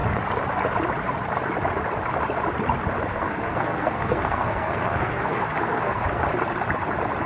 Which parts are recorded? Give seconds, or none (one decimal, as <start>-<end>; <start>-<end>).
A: 0.0-3.1; 6.2-7.3